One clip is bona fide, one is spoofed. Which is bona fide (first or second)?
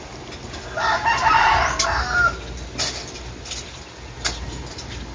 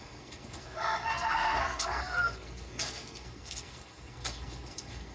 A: first